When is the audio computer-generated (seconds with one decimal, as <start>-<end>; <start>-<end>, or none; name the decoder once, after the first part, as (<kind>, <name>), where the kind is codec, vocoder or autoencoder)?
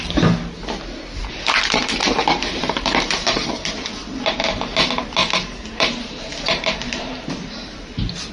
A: 1.2-4.3 (vocoder, BigVGAN v2); 5.2-7.7